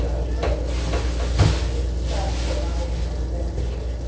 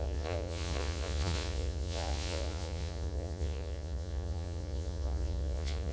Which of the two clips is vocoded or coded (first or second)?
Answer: second